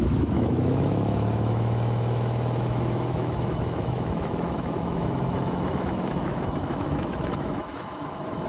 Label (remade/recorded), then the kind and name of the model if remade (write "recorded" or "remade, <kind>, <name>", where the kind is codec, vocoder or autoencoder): remade, autoencoder, DAC-VAE